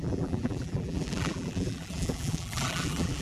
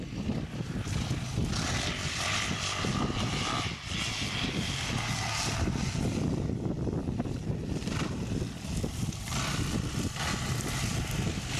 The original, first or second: second